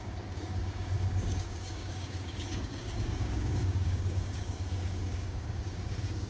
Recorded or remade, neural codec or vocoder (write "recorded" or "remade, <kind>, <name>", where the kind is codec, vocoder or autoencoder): remade, codec, DAC